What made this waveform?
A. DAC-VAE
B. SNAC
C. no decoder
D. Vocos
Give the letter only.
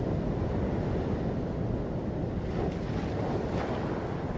C